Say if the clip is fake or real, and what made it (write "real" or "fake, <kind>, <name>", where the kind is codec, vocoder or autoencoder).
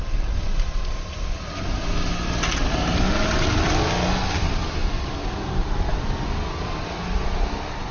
real